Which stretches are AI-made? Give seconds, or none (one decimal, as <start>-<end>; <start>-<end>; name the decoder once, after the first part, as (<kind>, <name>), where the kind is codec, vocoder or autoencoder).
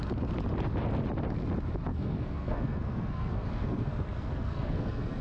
1.9-5.2 (codec, SNAC)